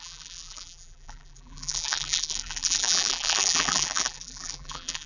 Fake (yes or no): yes